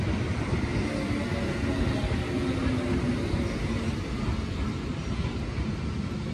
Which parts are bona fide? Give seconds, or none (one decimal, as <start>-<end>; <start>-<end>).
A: 0.0-6.3